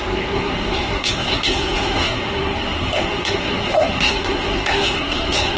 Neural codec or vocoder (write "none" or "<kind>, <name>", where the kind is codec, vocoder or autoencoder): codec, SNAC